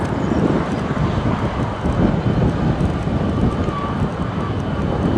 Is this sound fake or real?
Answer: real